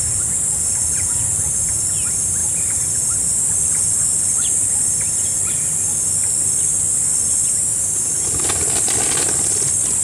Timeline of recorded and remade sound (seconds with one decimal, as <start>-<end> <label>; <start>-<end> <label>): 0.0-2.4 recorded; 2.4-3.5 remade; 3.5-7.4 recorded; 7.4-8.2 remade; 8.2-10.0 recorded